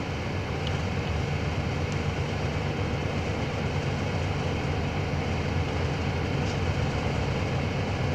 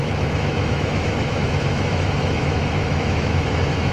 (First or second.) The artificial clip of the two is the second